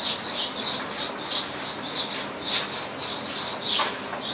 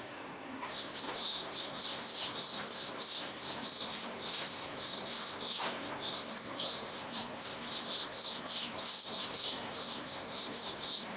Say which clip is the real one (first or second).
first